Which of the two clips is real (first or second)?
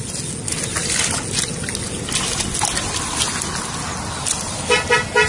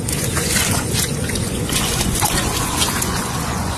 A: first